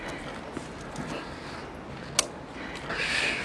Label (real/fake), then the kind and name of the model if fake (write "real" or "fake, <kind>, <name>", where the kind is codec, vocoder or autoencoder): real